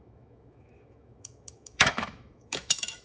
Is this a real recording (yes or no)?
no